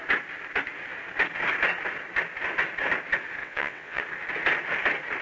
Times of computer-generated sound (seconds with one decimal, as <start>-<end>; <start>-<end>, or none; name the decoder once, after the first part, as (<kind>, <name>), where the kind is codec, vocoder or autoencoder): 3.4-4.0 (vocoder, WaveNeXt)